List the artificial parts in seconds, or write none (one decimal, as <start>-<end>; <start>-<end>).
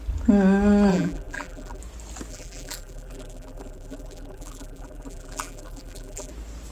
0.9-1.8; 2.3-6.3